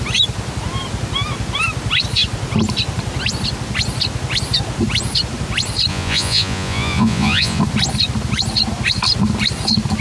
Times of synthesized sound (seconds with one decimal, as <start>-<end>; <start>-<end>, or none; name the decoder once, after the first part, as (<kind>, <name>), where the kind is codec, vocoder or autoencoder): 5.9-7.6 (vocoder, Vocos)